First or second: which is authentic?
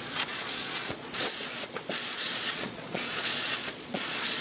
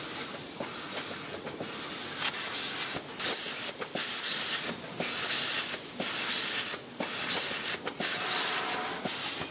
second